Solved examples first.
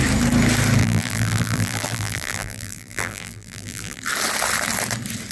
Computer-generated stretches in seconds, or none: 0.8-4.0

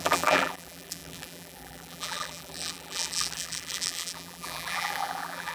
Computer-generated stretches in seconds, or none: 0.0-5.5

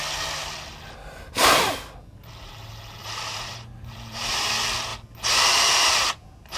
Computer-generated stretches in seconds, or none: 3.0-4.5